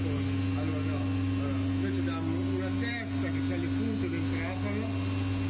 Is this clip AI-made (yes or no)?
no